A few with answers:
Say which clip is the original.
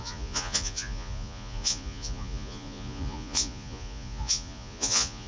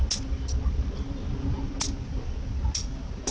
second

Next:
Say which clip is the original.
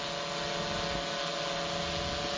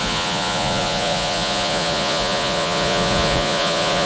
first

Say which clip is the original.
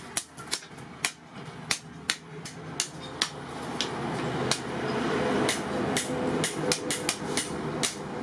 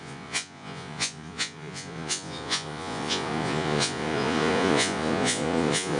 first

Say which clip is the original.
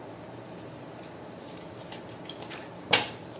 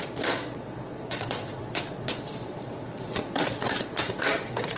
first